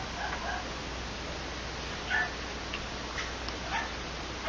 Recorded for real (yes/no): yes